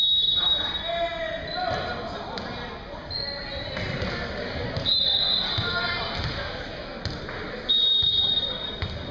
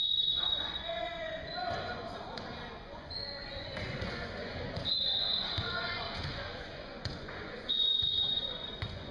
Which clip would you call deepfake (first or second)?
second